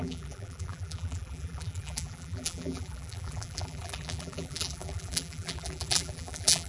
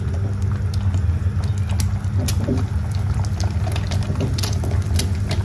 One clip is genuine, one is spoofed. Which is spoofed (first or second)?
first